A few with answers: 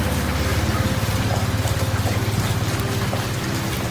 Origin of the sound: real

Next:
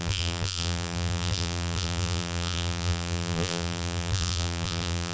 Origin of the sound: fake